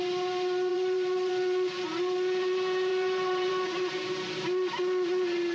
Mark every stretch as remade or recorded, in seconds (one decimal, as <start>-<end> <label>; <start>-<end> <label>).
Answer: 0.0-0.7 recorded; 0.7-1.3 remade; 1.3-2.9 recorded; 2.9-3.5 remade; 3.5-5.5 recorded

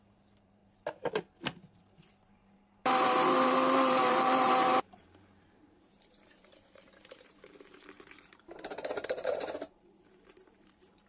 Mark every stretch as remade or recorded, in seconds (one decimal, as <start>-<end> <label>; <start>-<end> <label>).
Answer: 0.0-0.6 remade; 0.6-1.6 recorded; 1.6-11.1 remade

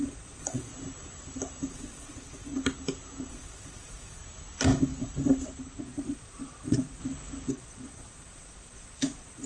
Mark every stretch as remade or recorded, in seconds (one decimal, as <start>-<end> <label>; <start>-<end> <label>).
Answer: 0.0-0.7 remade; 0.7-1.7 recorded; 1.7-2.5 remade; 2.5-3.3 recorded; 3.3-4.2 remade; 4.2-5.8 recorded; 5.8-7.0 remade; 7.0-7.5 recorded; 7.5-9.5 remade

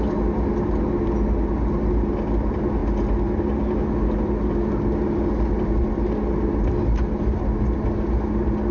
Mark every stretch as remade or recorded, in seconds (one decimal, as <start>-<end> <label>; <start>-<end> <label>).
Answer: 0.0-8.7 recorded

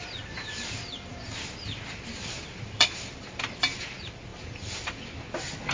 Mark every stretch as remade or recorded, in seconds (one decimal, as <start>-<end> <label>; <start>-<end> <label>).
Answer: 0.0-1.1 remade; 1.1-1.6 recorded; 1.6-5.7 remade

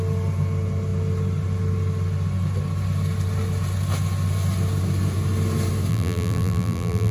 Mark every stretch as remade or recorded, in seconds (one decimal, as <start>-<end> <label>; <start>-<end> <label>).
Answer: 0.0-5.9 recorded; 5.9-7.1 remade